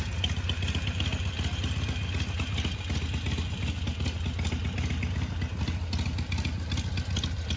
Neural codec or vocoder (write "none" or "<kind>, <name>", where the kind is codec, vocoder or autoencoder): none